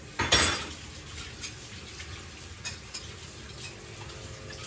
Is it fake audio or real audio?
real